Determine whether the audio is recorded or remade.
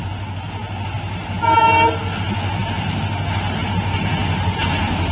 recorded